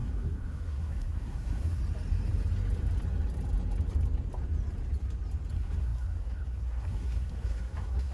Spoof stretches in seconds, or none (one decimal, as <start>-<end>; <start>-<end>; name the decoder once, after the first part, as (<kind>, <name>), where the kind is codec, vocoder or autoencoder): 0.0-1.8 (codec, SNAC); 5.5-8.1